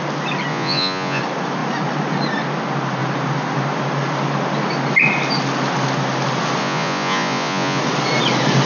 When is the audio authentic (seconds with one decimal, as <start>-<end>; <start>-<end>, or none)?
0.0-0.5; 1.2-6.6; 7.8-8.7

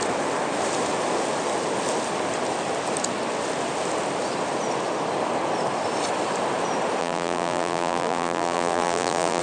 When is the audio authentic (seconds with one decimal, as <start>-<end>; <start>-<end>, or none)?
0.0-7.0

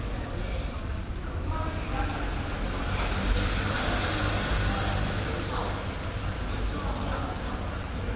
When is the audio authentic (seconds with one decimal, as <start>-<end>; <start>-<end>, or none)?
0.0-8.2